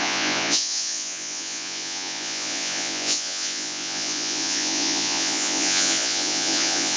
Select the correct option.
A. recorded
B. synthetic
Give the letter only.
B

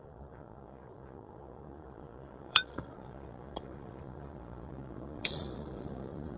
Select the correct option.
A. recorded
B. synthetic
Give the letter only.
B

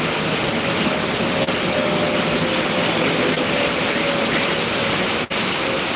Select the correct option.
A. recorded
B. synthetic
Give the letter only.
A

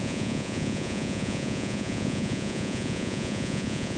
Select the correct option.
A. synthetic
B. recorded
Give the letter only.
A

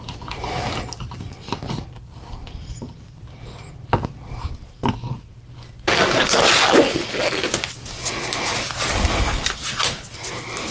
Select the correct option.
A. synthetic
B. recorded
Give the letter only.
B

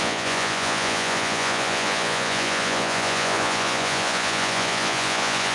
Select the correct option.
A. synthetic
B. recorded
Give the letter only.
A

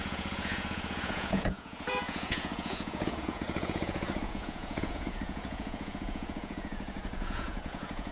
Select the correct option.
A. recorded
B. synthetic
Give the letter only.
B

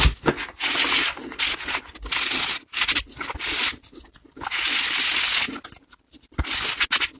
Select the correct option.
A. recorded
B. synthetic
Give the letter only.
A